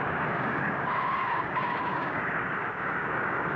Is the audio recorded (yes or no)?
no